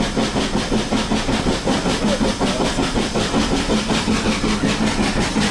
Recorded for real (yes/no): yes